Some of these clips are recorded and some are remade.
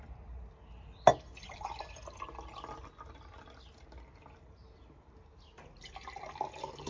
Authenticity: recorded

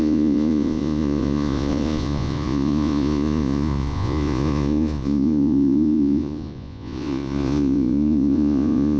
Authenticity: remade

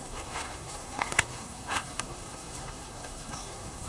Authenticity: remade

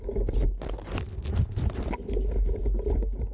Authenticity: recorded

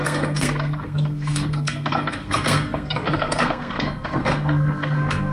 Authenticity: remade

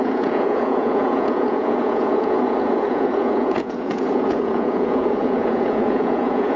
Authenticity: remade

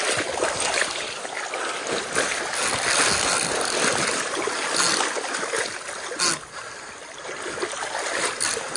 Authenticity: recorded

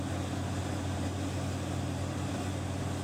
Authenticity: recorded